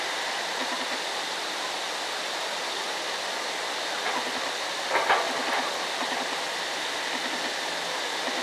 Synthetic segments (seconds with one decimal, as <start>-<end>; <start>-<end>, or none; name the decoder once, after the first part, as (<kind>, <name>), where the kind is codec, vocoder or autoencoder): none